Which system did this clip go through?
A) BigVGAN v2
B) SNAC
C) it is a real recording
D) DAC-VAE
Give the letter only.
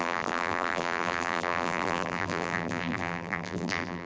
A